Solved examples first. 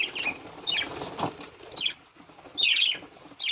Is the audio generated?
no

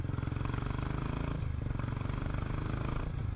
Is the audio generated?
no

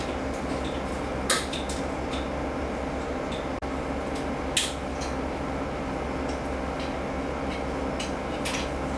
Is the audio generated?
no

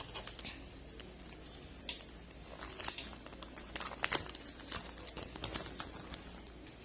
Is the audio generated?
no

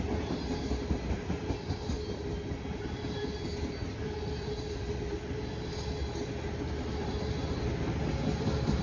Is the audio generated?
no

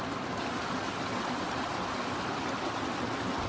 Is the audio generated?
no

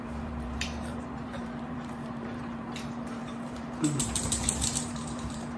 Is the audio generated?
yes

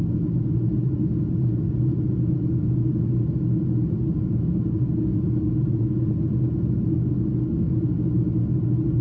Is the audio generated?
no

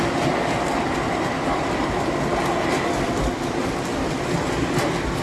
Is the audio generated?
no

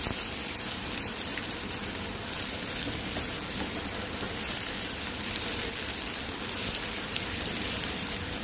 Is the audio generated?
no